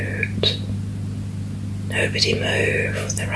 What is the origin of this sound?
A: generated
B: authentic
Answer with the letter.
B